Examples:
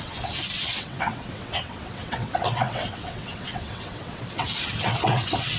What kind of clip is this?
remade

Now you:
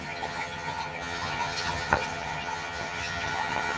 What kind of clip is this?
remade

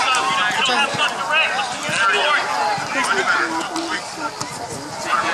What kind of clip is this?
recorded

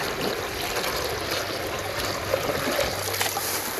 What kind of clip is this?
recorded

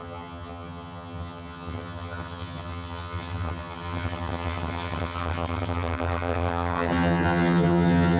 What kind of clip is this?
remade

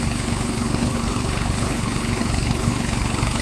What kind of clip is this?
remade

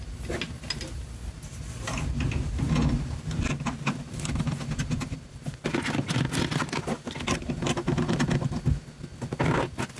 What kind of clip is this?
recorded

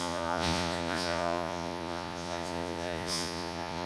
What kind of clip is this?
remade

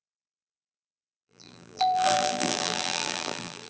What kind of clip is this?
remade